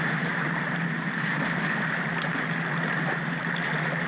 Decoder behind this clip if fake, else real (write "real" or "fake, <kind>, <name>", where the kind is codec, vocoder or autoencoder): real